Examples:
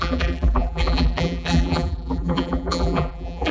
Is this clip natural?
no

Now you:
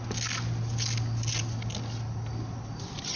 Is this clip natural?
yes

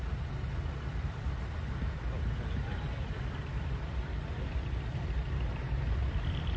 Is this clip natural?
yes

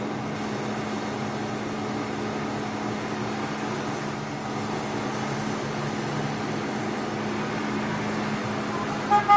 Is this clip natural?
yes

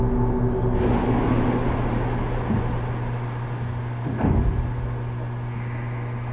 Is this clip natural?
yes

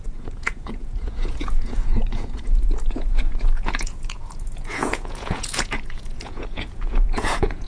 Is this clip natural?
no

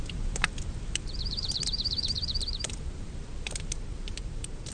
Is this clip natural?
no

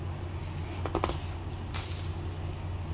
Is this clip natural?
yes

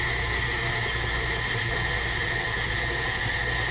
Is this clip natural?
yes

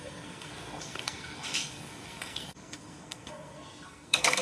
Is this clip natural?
no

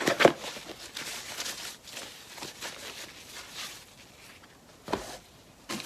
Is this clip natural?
yes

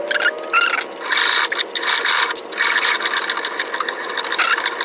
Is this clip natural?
yes